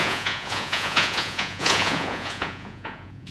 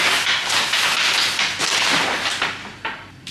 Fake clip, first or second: first